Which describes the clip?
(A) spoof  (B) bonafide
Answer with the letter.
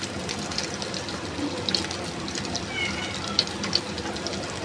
B